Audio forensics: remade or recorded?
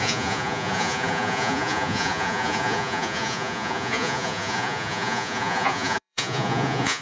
remade